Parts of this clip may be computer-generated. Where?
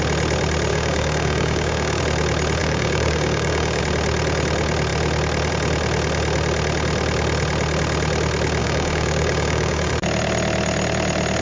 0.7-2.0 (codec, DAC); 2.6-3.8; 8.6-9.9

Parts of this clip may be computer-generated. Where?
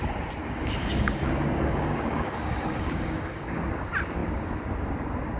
0.4-3.6 (codec, DAC)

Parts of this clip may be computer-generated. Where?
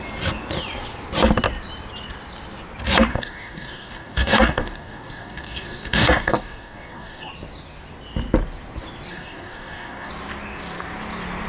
3.1-7.3 (codec, DAC); 9.1-10.1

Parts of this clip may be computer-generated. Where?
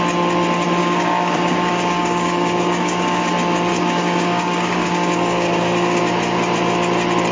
0.8-3.2 (codec, DAC); 3.7-6.0